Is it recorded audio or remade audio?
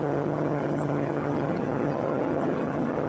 remade